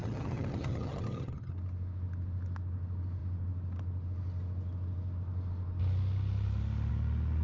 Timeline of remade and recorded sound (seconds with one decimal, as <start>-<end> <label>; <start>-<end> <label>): 0.0-1.5 remade; 1.5-7.4 recorded